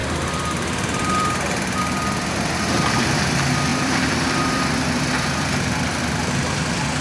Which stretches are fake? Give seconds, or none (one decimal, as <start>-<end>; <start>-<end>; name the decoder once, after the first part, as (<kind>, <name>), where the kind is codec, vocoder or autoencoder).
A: 0.0-1.8 (vocoder, BigVGAN v2); 3.7-6.0